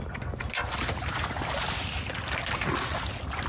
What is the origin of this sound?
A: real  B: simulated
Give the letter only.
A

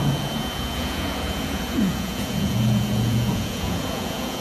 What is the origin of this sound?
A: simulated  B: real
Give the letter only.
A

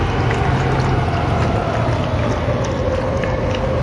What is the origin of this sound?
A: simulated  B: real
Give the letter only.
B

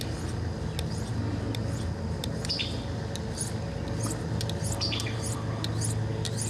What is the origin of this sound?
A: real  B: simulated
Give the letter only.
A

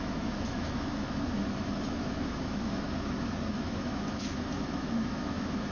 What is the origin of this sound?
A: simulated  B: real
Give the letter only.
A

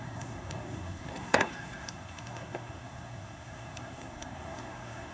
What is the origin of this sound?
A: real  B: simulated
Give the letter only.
B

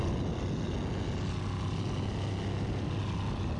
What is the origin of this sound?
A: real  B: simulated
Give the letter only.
A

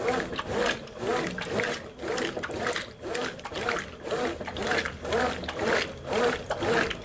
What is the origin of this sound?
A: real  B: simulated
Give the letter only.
A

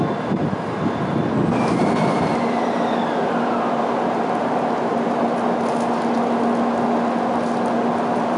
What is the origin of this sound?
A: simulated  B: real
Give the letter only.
B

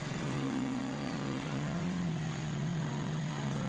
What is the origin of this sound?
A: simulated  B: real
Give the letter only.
A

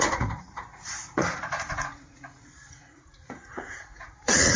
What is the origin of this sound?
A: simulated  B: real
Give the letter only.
A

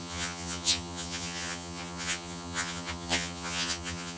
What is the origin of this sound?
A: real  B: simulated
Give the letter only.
B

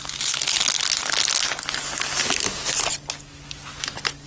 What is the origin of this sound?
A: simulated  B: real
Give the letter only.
B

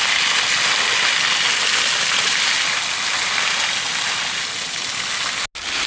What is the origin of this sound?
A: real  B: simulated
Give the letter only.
A